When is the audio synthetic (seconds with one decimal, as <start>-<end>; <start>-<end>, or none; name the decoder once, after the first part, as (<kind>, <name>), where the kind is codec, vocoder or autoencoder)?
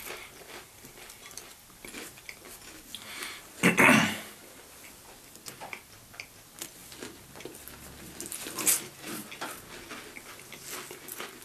none